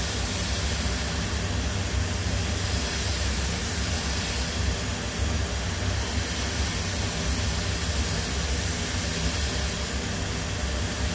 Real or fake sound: real